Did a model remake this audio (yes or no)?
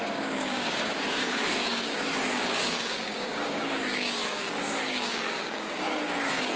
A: yes